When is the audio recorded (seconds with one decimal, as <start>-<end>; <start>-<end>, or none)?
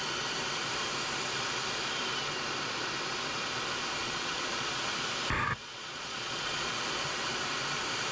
0.0-4.0; 4.9-5.6; 6.7-8.1